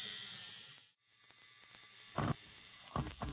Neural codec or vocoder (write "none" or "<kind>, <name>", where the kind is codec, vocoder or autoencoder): vocoder, BigVGAN v2